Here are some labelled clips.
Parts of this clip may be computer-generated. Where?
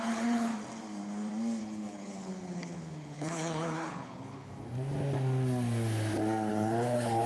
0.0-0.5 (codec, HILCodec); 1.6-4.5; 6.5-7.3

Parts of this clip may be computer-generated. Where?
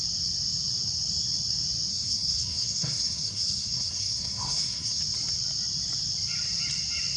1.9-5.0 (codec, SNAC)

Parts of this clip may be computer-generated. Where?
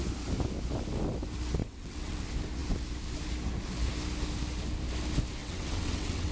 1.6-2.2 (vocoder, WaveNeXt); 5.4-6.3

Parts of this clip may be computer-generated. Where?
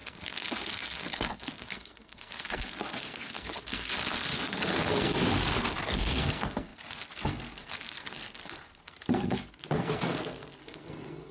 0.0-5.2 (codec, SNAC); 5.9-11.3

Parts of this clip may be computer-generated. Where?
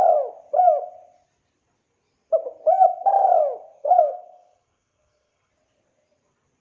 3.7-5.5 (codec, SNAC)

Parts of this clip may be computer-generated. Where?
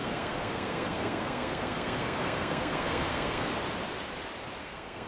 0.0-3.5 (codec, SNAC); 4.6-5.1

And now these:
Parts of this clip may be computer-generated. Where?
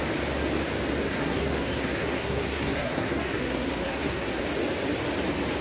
1.0-4.4 (codec, SNAC)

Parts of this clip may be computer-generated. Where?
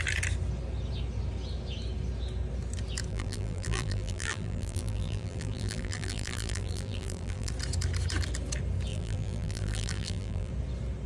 3.1-7.5 (vocoder, BigVGAN v2); 8.9-10.5